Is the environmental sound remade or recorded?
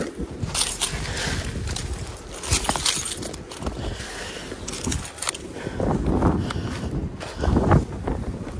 recorded